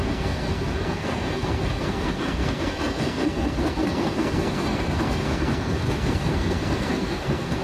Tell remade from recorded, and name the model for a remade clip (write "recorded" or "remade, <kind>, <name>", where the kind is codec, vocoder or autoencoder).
remade, codec, SNAC